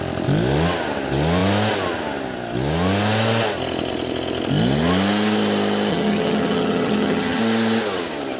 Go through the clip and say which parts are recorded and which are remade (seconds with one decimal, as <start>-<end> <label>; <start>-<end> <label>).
0.0-5.9 recorded; 5.9-7.4 remade; 7.4-8.4 recorded